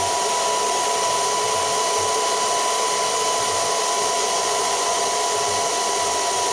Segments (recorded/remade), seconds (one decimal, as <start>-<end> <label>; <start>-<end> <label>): 0.0-4.2 recorded; 4.2-5.0 remade; 5.0-6.5 recorded